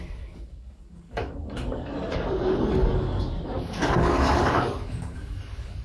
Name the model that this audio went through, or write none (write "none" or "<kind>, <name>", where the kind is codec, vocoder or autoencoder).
codec, DAC